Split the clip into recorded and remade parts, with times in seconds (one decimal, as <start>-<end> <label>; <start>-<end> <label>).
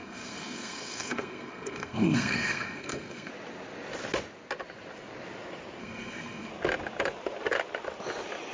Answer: 0.0-3.3 remade; 3.3-5.8 recorded; 5.8-6.5 remade; 6.5-8.5 recorded